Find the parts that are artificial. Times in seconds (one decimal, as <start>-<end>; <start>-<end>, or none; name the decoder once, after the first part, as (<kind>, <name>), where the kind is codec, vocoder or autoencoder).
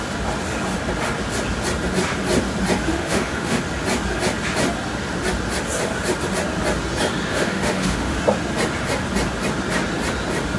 2.9-3.6 (autoencoder, DAC-VAE); 7.3-8.2